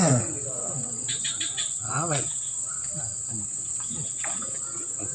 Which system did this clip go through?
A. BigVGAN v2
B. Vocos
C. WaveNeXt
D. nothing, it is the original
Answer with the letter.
C